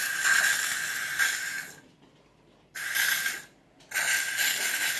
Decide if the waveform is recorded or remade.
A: recorded